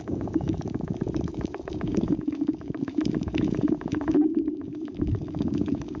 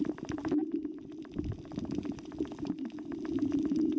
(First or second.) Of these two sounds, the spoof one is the first